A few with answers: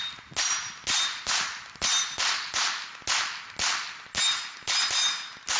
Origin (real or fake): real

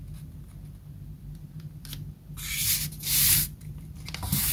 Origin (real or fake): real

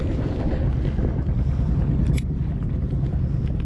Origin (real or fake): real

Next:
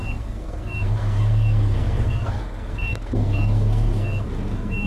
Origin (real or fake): fake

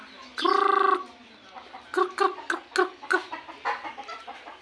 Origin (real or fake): real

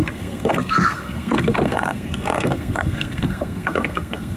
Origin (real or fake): fake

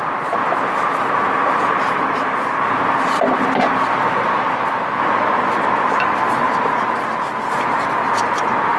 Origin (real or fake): real